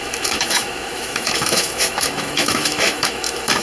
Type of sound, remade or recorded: remade